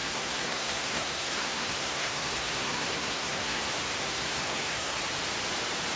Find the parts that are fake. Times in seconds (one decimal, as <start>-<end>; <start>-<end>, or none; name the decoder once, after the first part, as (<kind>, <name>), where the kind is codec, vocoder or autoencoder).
0.0-3.6 (codec, SNAC); 4.0-5.0